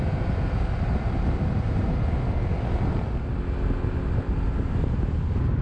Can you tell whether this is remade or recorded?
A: recorded